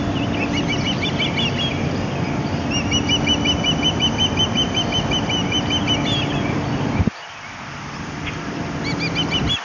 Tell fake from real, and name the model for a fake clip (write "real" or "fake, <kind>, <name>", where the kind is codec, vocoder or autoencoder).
real